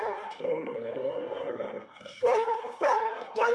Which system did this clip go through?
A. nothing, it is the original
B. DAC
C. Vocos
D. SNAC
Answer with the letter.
D